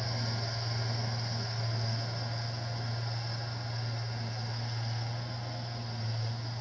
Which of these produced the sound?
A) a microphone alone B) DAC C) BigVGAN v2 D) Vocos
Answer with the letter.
A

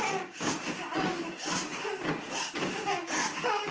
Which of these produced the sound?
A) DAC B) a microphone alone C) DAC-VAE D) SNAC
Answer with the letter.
A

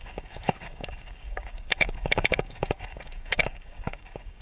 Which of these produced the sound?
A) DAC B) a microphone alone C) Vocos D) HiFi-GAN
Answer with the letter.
A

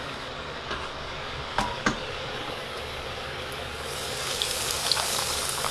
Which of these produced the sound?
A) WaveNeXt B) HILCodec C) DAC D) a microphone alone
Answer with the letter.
C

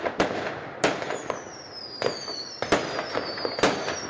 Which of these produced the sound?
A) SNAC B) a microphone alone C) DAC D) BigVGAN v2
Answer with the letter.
B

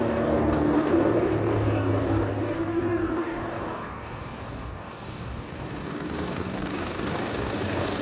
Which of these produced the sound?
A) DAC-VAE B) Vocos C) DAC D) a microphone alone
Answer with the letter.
C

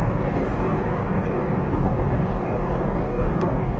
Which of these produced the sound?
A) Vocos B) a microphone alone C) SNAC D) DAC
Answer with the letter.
D